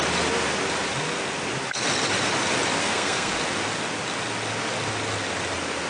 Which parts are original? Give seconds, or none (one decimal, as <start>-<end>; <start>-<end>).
0.0-2.8; 3.3-5.9